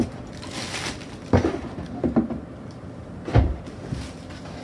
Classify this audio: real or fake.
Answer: real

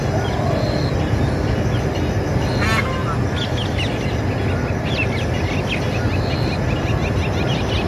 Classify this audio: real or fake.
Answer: real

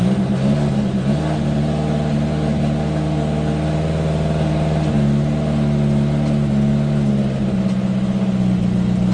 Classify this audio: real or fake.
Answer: real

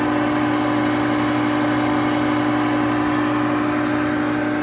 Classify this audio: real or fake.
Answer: real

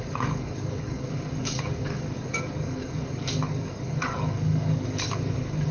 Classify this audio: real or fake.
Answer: fake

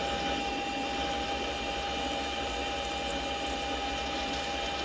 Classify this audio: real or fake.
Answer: real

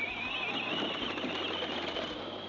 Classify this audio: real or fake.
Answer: real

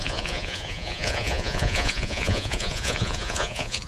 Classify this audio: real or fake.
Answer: fake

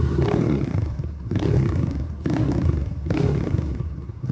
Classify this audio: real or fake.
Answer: fake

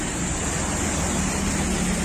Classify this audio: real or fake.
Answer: real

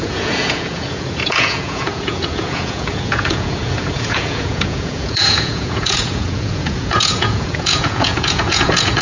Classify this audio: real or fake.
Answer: fake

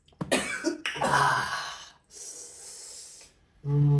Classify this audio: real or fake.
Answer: real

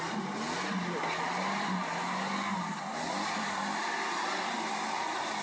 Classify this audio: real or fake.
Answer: real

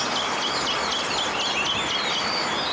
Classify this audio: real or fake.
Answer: real